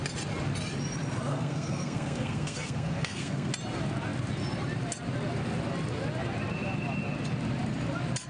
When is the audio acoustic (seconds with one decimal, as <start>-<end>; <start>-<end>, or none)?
0.0-1.3; 3.5-8.3